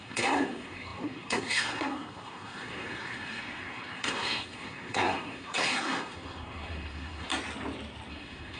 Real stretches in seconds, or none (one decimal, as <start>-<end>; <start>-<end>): 7.3-8.1